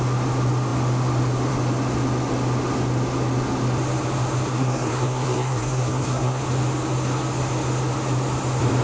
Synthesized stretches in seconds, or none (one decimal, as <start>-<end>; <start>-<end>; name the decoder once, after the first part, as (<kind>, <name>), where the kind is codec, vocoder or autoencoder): 4.5-6.4 (codec, SNAC)